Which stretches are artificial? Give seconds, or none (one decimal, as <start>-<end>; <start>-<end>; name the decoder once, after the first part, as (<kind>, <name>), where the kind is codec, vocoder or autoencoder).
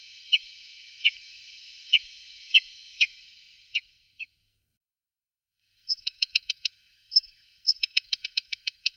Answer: 0.0-9.0 (codec, SNAC)